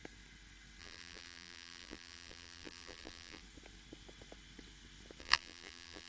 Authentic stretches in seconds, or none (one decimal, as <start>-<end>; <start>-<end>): 0.0-0.8; 3.4-5.2